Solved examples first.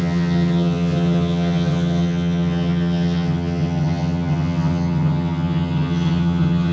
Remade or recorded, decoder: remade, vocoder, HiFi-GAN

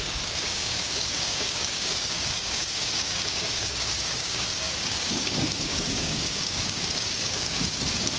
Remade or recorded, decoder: remade, codec, DAC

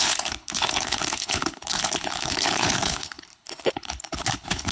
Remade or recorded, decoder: remade, codec, HILCodec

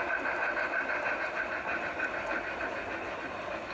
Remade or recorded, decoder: recorded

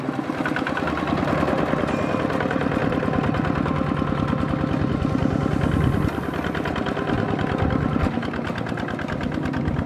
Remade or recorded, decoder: recorded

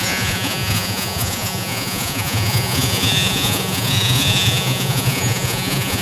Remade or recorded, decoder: remade, vocoder, Vocos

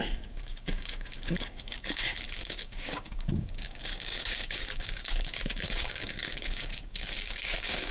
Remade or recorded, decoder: remade, codec, DAC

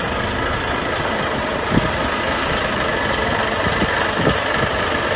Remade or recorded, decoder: recorded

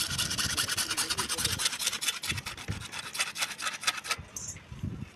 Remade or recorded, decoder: recorded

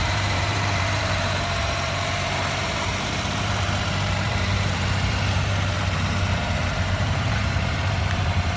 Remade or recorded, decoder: remade, vocoder, BigVGAN v2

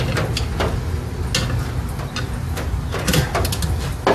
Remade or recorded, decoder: recorded